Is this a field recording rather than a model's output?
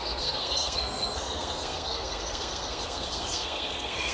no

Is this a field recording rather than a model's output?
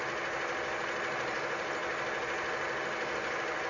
yes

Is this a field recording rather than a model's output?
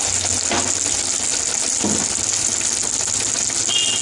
yes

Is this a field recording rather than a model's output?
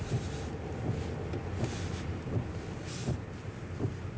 yes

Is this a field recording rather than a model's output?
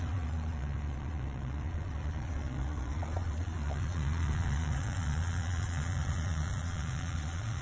no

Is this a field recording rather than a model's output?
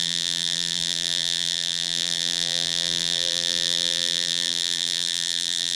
no